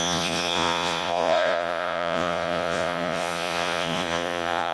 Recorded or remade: remade